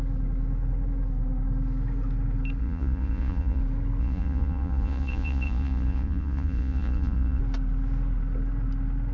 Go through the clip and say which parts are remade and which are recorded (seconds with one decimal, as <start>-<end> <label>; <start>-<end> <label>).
0.0-2.6 recorded; 2.6-3.6 remade; 3.6-4.0 recorded; 4.0-7.4 remade; 7.4-9.1 recorded